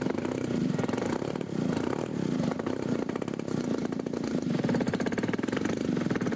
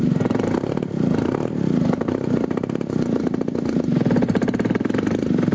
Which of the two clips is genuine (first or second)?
second